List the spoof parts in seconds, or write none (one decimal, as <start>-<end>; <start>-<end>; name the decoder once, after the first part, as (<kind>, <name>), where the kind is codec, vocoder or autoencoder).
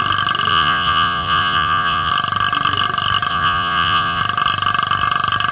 0.5-2.1 (vocoder, Vocos); 3.3-4.2